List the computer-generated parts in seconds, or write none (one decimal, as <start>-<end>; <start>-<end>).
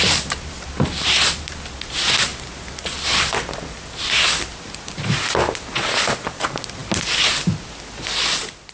none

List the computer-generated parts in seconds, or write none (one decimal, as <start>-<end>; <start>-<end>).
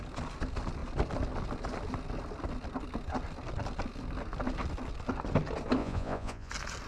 5.8-6.5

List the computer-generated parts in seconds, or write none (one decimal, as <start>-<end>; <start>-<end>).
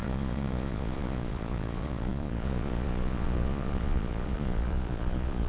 0.0-5.5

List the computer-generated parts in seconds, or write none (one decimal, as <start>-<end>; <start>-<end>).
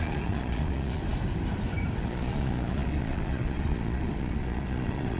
0.0-1.0; 2.0-5.2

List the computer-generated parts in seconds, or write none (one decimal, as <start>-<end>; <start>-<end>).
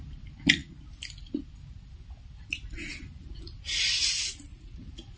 4.5-5.2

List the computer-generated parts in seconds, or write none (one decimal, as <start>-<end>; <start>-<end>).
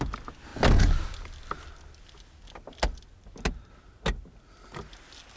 none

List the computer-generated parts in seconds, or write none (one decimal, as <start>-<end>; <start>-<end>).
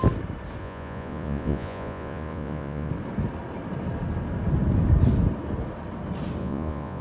0.6-2.9; 6.4-7.0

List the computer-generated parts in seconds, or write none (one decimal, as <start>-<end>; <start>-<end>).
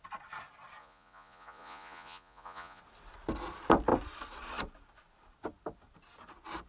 0.8-2.8